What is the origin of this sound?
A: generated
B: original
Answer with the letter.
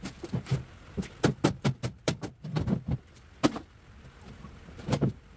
A